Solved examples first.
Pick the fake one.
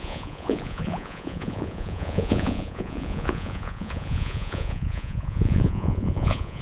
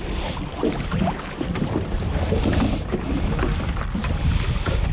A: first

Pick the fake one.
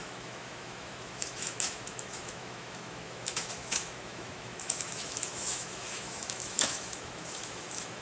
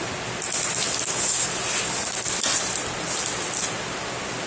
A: first